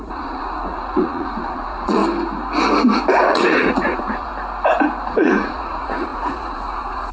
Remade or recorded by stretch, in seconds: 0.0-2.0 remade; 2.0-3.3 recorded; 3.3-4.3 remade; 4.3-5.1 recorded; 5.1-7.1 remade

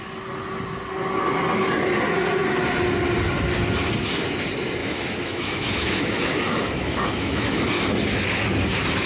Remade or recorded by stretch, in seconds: 0.0-4.8 recorded; 4.8-7.7 remade; 7.7-9.1 recorded

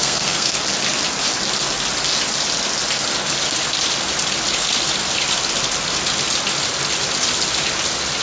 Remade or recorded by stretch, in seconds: 0.0-0.6 remade; 0.6-8.2 recorded

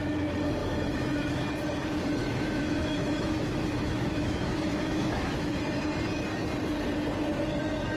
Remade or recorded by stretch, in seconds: 0.0-0.6 recorded; 0.6-1.5 remade; 1.5-2.2 recorded; 2.2-5.6 remade; 5.6-8.0 recorded

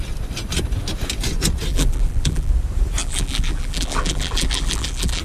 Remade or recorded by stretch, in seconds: 0.0-1.7 recorded; 1.7-2.5 remade; 2.5-3.0 recorded; 3.0-5.2 remade

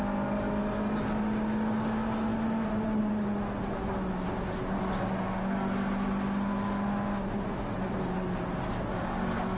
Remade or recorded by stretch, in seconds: 0.0-9.6 recorded